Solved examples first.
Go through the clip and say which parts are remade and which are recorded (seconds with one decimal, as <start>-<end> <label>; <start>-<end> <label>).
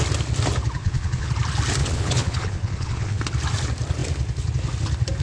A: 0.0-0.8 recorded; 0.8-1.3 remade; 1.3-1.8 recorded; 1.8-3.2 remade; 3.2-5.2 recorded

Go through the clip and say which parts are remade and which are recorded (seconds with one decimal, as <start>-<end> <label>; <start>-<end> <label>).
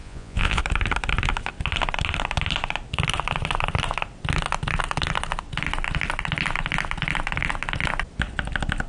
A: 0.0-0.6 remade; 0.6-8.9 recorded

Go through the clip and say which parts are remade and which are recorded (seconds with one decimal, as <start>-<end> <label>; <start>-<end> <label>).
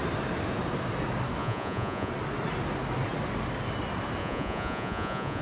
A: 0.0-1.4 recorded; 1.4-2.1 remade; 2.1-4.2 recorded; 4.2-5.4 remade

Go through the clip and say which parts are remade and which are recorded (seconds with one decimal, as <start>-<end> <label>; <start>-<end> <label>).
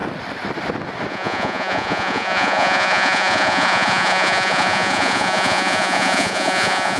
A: 0.0-1.1 recorded; 1.1-7.0 remade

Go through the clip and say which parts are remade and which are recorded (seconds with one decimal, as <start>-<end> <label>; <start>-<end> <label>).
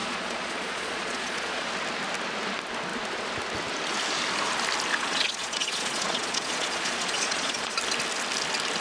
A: 0.0-1.7 remade; 1.7-4.9 recorded; 4.9-7.8 remade; 7.8-8.8 recorded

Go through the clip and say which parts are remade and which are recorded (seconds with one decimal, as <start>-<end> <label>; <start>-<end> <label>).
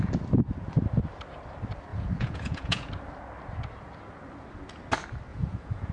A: 0.0-1.9 recorded; 1.9-2.9 remade; 2.9-5.3 recorded; 5.3-5.9 remade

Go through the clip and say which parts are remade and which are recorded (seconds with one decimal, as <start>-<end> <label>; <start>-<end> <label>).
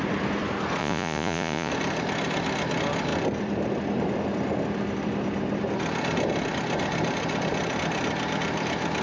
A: 0.0-0.8 recorded; 0.8-1.7 remade; 1.7-9.0 recorded